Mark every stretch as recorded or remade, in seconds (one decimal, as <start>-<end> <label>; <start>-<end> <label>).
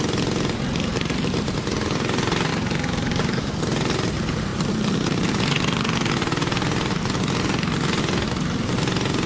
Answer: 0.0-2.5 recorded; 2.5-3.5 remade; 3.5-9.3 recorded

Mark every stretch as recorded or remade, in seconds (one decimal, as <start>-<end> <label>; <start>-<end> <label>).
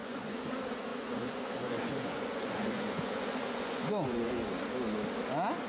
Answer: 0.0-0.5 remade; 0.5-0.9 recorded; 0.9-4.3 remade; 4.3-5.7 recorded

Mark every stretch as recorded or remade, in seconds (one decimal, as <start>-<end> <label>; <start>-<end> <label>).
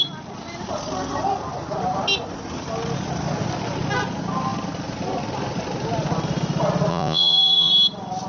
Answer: 0.0-6.9 recorded; 6.9-7.7 remade; 7.7-8.3 recorded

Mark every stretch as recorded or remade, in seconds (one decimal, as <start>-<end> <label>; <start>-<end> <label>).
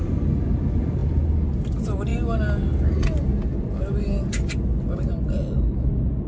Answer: 0.0-6.3 recorded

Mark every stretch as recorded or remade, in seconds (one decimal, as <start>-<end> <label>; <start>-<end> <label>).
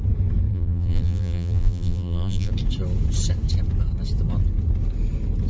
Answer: 0.0-0.5 recorded; 0.5-2.5 remade; 2.5-5.5 recorded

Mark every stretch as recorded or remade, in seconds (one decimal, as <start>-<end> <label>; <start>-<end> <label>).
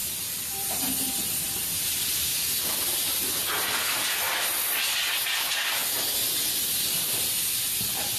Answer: 0.0-8.2 recorded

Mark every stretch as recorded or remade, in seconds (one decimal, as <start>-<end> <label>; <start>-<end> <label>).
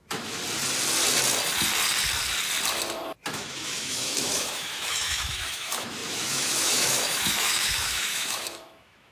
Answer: 0.0-0.4 remade; 0.4-3.3 recorded; 3.3-9.1 remade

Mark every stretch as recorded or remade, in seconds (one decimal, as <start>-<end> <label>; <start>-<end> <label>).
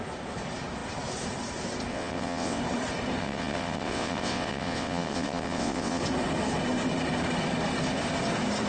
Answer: 0.0-1.9 recorded; 1.9-2.6 remade; 2.6-3.2 recorded; 3.2-6.0 remade; 6.0-8.7 recorded